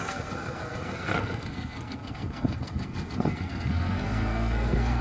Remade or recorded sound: remade